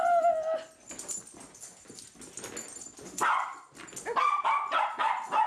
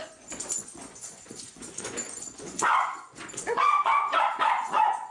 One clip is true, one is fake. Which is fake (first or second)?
second